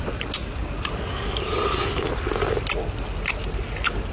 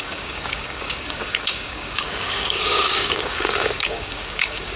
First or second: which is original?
first